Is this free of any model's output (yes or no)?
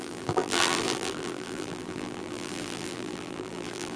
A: no